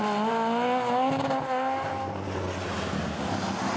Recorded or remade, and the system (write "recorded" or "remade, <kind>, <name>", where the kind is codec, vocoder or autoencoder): recorded